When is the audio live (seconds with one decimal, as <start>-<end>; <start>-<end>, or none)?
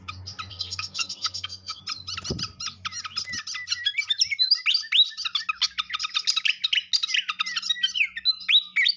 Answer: 0.0-0.5; 1.8-9.0